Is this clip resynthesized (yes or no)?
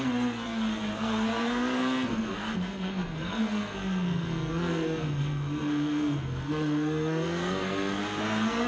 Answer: yes